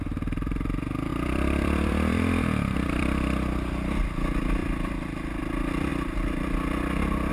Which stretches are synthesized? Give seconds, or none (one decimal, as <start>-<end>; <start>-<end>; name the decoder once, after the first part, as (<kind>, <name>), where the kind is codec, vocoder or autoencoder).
0.0-5.9 (vocoder, BigVGAN v2)